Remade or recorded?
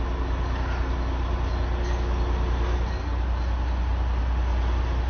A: recorded